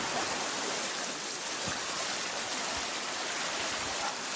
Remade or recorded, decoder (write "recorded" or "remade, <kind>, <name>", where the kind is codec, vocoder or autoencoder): recorded